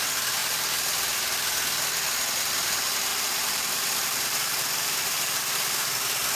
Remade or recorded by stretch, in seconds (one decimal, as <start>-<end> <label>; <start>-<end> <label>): 0.0-3.1 recorded; 3.1-5.8 remade; 5.8-6.3 recorded